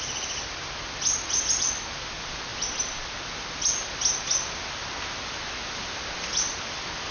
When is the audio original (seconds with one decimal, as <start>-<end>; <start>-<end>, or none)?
0.0-7.1